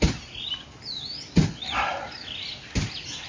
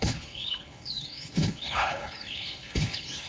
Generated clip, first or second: second